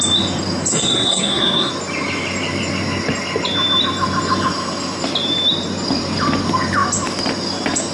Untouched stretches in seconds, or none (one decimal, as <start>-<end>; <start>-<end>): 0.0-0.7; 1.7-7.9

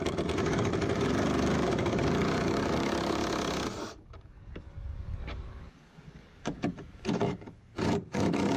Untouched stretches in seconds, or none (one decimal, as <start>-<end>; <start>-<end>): 3.2-3.8

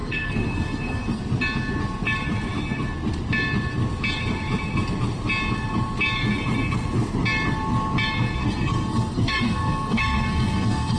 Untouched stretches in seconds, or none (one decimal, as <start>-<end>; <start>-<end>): 1.2-8.4

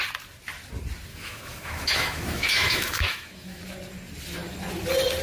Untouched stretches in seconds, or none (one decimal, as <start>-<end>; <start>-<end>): 0.0-1.1; 3.6-5.2